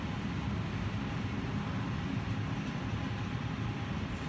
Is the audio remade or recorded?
recorded